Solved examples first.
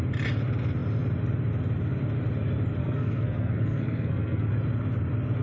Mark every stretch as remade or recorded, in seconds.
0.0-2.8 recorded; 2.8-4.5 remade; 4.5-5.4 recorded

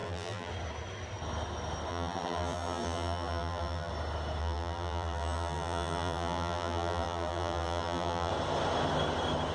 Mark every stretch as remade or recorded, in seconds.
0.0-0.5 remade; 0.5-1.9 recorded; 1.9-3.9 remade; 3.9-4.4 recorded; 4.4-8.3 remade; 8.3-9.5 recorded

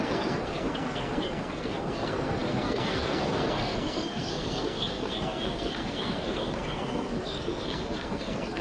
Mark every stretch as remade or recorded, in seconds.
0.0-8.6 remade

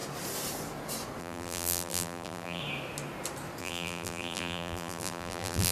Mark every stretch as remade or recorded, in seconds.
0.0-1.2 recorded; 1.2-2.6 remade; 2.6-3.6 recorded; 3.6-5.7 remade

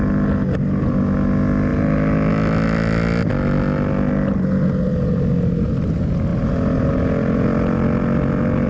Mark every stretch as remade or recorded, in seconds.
0.0-8.7 recorded

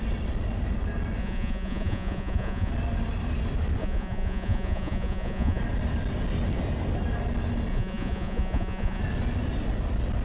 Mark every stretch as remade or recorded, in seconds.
0.0-1.2 recorded; 1.2-2.7 remade; 2.7-3.8 recorded; 3.8-5.6 remade; 5.6-7.7 recorded; 7.7-9.0 remade; 9.0-10.2 recorded